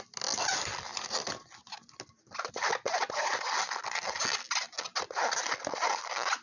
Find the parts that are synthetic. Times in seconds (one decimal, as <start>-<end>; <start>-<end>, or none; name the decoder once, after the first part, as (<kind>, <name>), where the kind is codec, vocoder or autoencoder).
none